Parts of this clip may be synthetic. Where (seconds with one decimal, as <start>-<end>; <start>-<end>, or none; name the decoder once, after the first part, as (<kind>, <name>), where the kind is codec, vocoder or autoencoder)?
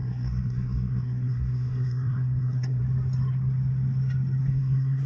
0.0-2.8 (codec, SNAC); 4.4-5.1